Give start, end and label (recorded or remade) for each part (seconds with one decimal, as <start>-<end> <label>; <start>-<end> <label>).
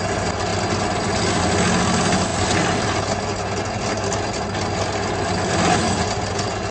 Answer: 0.0-6.7 recorded